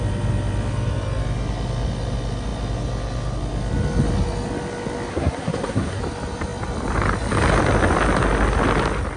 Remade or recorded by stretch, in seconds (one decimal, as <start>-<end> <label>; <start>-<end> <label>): 0.0-5.1 recorded; 5.1-6.0 remade; 6.0-9.2 recorded